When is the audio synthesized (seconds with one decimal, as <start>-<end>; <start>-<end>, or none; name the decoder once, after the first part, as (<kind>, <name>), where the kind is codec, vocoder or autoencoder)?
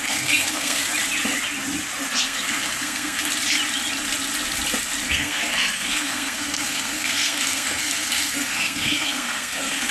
0.0-0.8 (codec, SNAC); 2.2-3.3; 5.1-9.9